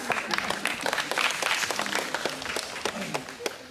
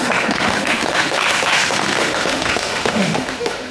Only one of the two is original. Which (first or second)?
first